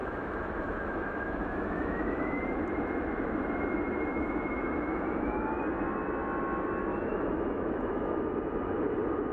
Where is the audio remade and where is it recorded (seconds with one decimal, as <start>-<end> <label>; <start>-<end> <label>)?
0.0-2.4 remade; 2.4-4.1 recorded; 4.1-5.6 remade; 5.6-6.9 recorded; 6.9-8.2 remade; 8.2-9.3 recorded